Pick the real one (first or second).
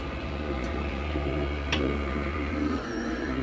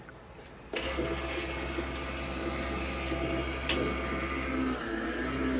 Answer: second